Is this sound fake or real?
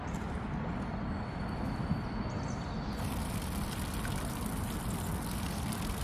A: real